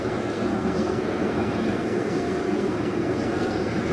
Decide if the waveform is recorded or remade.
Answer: remade